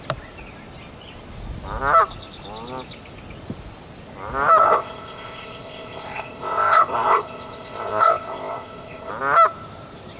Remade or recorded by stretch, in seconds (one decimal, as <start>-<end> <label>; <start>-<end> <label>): 0.0-4.6 recorded; 4.6-9.1 remade; 9.1-10.2 recorded